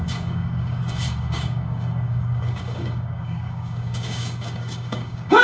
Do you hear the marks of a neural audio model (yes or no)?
yes